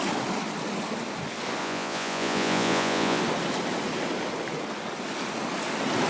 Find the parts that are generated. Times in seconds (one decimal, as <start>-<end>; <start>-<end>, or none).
1.6-3.2